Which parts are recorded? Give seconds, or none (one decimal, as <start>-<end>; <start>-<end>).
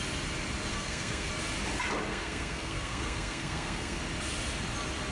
0.0-0.7; 1.3-2.1; 4.0-5.1